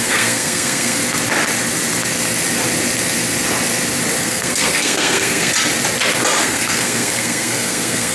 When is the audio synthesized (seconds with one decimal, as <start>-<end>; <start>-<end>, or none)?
0.0-1.0; 4.2-5.5; 6.4-8.1